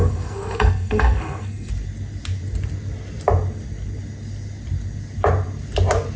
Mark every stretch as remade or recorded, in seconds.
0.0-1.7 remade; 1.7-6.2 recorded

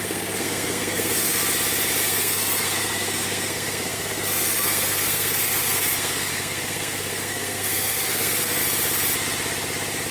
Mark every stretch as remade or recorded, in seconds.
0.0-1.4 remade; 1.4-2.0 recorded; 2.0-8.6 remade; 8.6-10.1 recorded

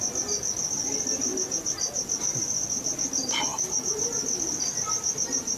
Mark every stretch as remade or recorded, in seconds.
0.0-5.6 recorded

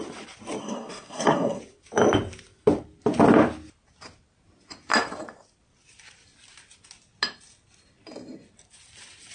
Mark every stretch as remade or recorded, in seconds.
0.0-0.6 recorded; 0.6-1.6 remade; 1.6-9.3 recorded

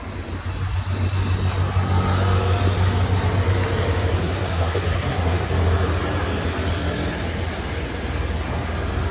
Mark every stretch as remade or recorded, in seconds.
0.0-4.2 recorded; 4.2-5.5 remade; 5.5-9.1 recorded